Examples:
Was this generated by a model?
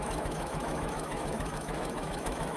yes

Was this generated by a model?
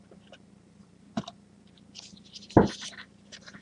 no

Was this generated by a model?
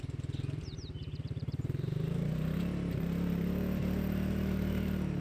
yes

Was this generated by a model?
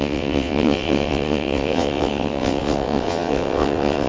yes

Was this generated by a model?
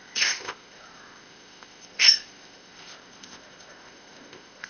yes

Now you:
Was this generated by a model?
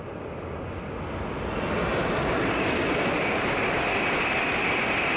no